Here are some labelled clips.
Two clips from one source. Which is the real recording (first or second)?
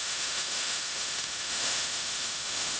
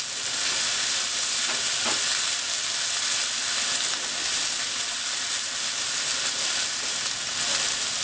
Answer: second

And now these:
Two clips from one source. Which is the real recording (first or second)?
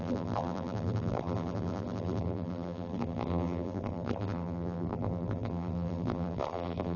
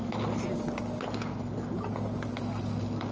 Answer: second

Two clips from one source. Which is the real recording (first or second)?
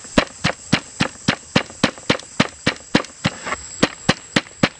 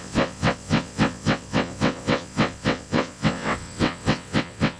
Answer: first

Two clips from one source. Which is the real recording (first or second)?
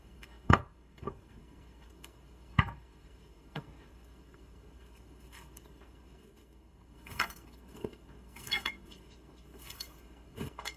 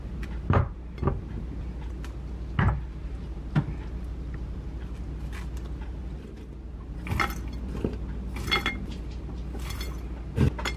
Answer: second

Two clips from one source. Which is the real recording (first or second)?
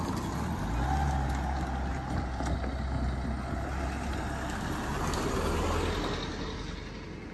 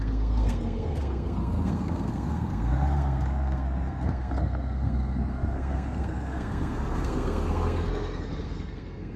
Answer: first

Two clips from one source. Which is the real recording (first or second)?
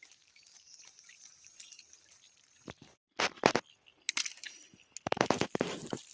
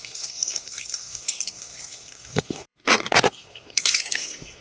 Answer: first